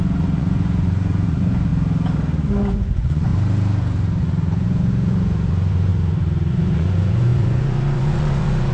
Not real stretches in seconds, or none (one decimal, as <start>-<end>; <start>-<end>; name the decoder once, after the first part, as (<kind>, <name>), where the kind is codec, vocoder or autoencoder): 0.0-1.7 (vocoder, Vocos); 2.7-3.3; 4.2-5.9; 6.5-8.7